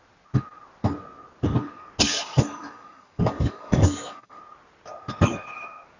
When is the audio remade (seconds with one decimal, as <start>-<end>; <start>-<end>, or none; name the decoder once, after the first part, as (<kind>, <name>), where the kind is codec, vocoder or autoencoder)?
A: 2.1-4.4 (codec, DAC)